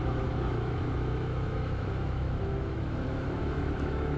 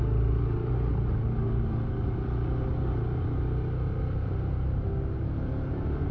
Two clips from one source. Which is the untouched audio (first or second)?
second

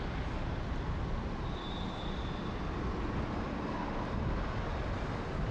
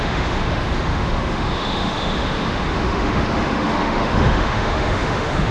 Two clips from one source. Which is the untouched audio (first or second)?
first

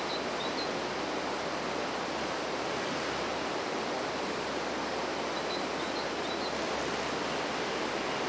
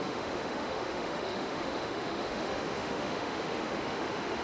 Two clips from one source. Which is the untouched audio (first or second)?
first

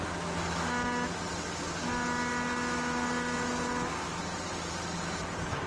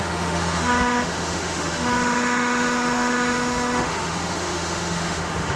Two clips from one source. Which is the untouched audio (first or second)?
first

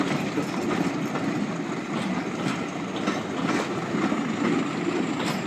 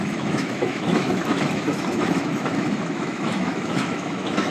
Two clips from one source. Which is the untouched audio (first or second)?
first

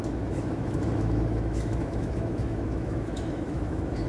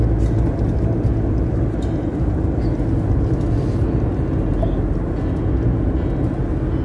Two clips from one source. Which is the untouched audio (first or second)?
second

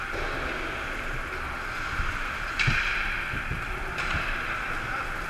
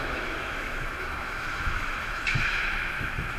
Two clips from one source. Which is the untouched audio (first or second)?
first